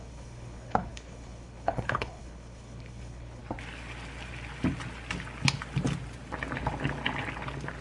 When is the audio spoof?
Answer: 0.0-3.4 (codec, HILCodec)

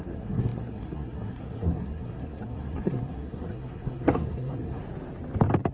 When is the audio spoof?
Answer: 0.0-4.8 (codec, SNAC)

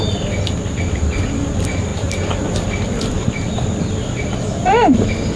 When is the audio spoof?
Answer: 1.9-5.4 (vocoder, BigVGAN v2)

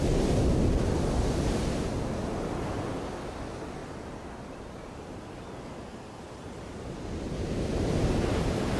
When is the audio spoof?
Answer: none

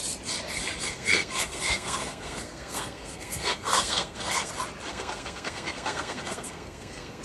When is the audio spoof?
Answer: 0.8-4.5 (codec, SNAC); 4.9-7.2

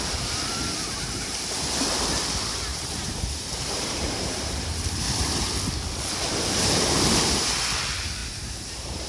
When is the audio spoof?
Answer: 2.7-5.0 (vocoder, BigVGAN v2); 8.2-9.1